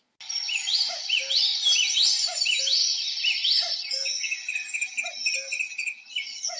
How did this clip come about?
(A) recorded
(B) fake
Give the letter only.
A